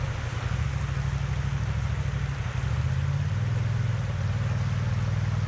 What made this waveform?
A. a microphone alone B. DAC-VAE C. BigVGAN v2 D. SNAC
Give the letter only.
A